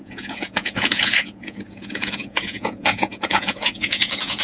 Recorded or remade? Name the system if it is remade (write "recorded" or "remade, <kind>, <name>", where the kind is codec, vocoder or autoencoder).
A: remade, vocoder, Vocos